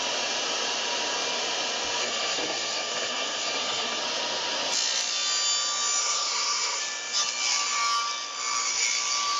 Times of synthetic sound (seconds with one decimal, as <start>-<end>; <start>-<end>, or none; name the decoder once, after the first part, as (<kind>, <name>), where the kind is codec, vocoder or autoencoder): 2.0-4.0 (codec, SNAC); 6.0-6.8